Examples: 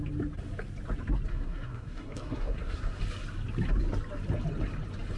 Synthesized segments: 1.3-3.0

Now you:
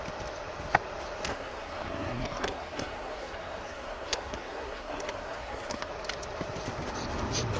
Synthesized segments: 1.3-5.9

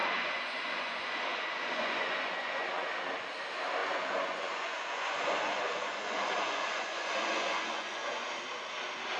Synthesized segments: 0.0-2.9; 3.8-8.3

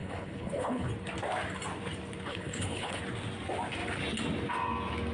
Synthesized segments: 0.0-0.9; 2.3-3.0

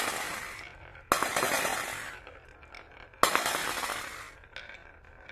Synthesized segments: none

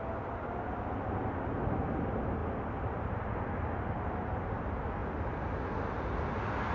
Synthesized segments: none